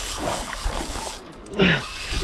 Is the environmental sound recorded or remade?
remade